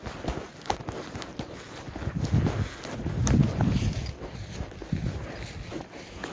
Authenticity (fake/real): real